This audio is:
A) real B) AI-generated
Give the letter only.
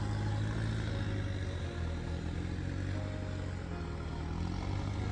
A